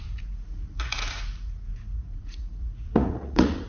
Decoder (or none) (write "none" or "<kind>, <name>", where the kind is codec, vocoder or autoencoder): vocoder, Vocos